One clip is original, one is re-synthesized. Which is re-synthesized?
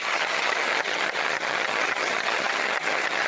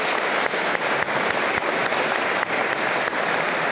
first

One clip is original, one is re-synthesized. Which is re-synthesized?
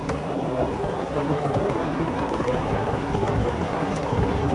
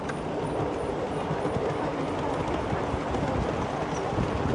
first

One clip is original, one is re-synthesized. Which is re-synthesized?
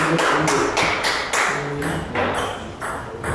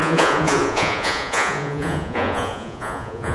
second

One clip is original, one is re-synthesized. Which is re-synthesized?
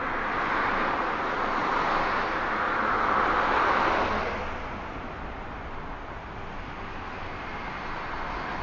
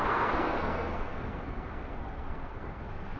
second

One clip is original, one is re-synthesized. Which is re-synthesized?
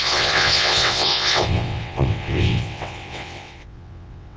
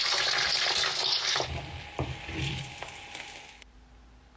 first